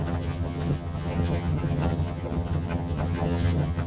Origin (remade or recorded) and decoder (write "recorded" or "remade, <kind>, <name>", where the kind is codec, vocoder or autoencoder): remade, vocoder, HiFi-GAN